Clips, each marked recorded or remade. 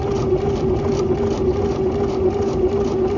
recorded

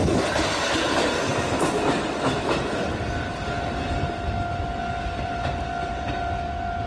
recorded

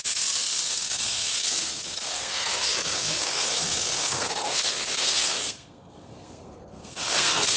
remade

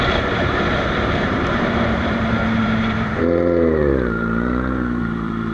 remade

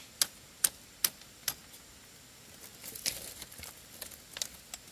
recorded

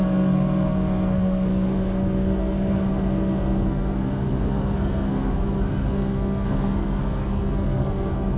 remade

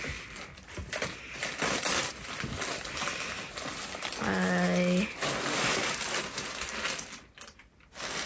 recorded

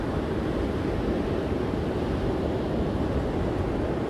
recorded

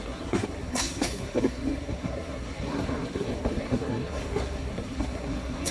remade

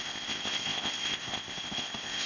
remade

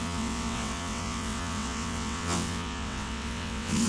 remade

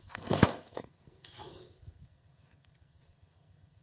remade